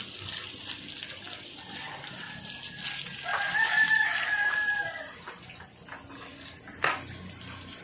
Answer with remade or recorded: recorded